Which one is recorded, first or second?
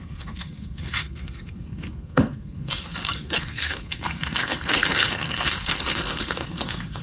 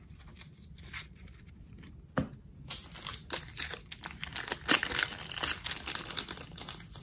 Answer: second